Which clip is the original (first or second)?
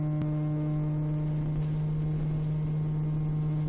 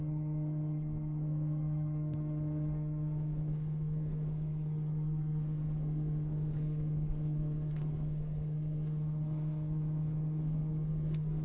first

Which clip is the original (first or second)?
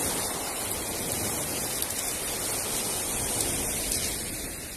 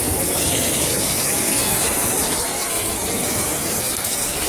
first